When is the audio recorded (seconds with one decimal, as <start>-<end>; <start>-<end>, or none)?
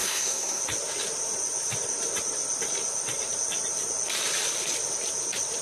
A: 0.6-5.6